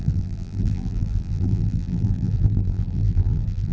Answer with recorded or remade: remade